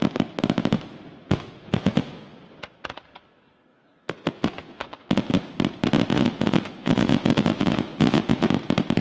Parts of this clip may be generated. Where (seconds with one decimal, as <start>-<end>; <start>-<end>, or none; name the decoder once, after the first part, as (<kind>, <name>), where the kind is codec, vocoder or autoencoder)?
1.2-2.4 (vocoder, Vocos); 3.7-5.3; 6.1-8.5